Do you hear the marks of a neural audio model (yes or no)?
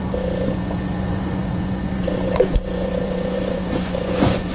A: yes